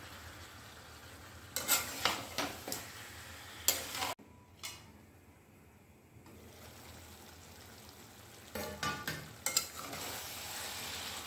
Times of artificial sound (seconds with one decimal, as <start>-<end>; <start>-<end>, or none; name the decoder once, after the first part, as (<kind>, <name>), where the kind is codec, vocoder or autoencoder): none